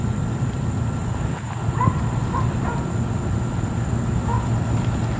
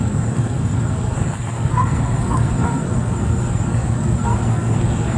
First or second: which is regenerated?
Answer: second